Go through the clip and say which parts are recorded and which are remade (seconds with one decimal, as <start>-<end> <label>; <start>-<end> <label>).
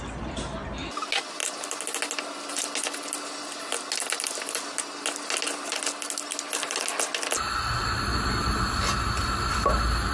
0.0-10.1 recorded